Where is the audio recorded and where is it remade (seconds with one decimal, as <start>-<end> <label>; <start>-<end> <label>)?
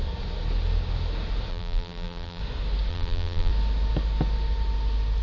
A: 0.0-1.5 recorded; 1.5-2.4 remade; 2.4-2.9 recorded; 2.9-3.5 remade; 3.5-5.2 recorded